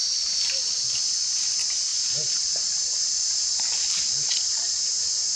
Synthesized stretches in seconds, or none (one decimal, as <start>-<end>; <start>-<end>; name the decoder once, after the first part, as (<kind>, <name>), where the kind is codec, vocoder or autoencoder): 0.0-1.0 (vocoder, BigVGAN v2); 1.9-2.5; 3.3-4.9